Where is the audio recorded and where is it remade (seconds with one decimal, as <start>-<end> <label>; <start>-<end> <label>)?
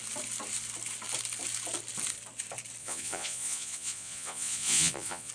0.0-2.8 recorded; 2.8-5.3 remade